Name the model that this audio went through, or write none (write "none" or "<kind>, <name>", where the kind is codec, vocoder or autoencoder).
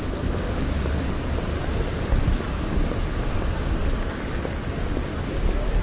none